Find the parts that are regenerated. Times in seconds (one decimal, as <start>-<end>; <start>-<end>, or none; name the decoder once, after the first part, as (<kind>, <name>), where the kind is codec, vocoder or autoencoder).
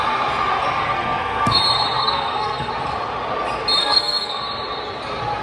0.8-1.6 (codec, SNAC); 2.0-2.7; 3.8-4.4